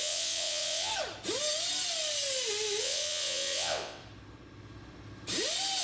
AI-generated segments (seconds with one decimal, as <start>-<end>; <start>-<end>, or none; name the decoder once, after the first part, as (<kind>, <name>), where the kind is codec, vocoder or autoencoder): 0.0-0.9 (vocoder, WaveNeXt); 2.8-4.0